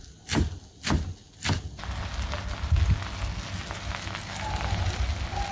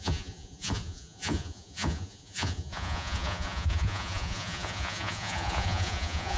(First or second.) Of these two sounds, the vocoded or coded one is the second